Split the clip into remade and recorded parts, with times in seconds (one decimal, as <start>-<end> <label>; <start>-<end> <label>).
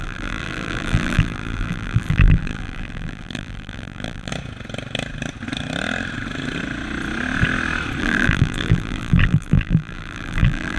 0.0-4.3 remade; 4.3-8.0 recorded; 8.0-10.8 remade